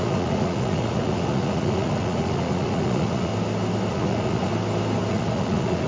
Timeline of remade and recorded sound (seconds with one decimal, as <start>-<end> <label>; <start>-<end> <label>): 0.0-3.3 remade; 3.3-3.9 recorded; 3.9-4.5 remade; 4.5-5.1 recorded; 5.1-5.9 remade